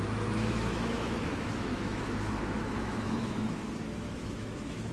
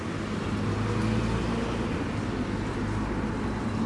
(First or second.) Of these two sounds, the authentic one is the second